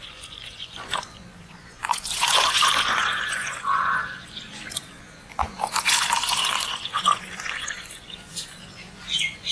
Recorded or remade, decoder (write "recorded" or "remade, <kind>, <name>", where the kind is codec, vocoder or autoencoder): remade, vocoder, Vocos